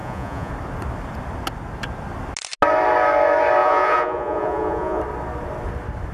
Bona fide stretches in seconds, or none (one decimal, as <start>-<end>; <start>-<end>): 0.5-3.6; 5.0-6.1